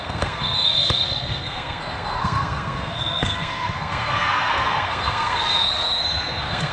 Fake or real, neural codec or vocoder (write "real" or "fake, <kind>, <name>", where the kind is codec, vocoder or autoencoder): fake, codec, SNAC